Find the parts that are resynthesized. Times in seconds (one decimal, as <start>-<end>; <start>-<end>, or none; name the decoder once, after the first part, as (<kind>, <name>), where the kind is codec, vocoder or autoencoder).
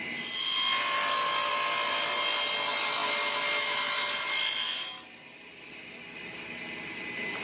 none